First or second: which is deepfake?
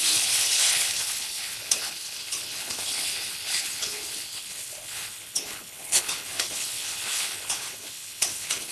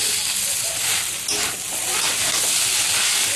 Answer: first